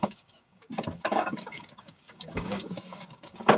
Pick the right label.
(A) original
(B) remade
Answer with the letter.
B